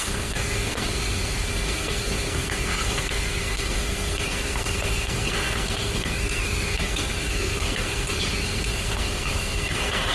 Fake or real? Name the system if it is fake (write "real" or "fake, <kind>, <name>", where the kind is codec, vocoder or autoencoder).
fake, codec, SNAC